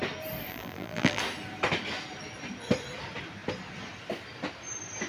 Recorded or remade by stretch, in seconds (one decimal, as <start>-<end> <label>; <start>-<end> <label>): 0.0-0.5 recorded; 0.5-1.2 remade; 1.2-5.1 recorded